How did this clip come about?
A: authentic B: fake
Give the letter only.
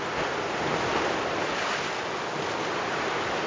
A